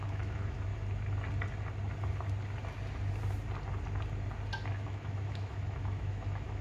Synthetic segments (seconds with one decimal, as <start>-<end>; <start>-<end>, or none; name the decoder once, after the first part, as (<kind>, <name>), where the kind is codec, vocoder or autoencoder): 0.0-0.7 (autoencoder, DAC-VAE); 4.7-6.6